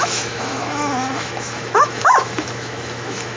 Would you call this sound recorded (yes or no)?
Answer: no